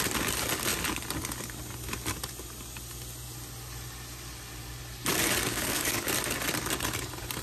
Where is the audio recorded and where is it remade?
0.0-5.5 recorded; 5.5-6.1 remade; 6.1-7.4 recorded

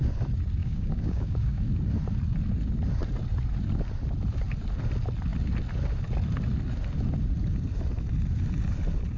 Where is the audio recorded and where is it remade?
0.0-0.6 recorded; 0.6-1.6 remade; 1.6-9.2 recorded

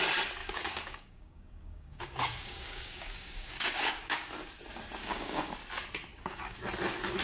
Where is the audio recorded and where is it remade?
0.0-0.4 recorded; 0.4-4.3 remade; 4.3-5.0 recorded; 5.0-5.5 remade; 5.5-6.1 recorded; 6.1-6.6 remade; 6.6-7.2 recorded

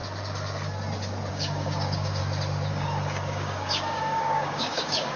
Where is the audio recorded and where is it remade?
0.0-1.3 recorded; 1.3-2.2 remade; 2.2-2.7 recorded; 2.7-5.2 remade

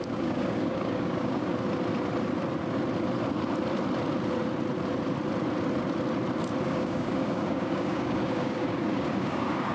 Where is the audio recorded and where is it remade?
0.0-1.5 remade; 1.5-6.6 recorded; 6.6-9.7 remade